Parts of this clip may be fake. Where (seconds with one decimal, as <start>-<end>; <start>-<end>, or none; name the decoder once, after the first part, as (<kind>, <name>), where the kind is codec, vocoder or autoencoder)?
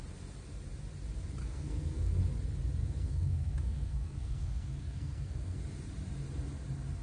1.4-2.2 (codec, SNAC); 2.8-5.6